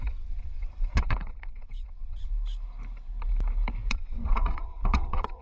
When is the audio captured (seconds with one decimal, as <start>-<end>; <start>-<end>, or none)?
2.3-3.9